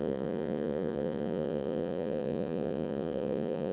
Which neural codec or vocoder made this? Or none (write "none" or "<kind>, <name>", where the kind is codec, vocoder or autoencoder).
vocoder, Vocos